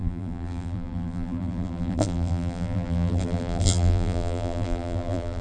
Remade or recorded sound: remade